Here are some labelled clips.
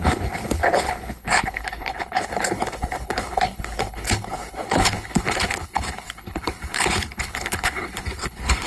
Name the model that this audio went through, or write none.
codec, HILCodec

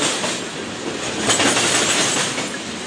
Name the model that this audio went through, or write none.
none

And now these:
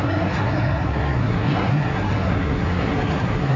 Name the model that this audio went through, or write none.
codec, SNAC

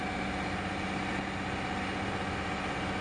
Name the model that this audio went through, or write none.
none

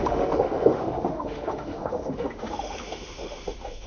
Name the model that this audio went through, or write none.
autoencoder, DAC-VAE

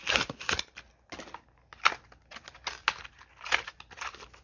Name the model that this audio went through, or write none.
none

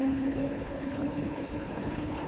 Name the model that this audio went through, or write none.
codec, HILCodec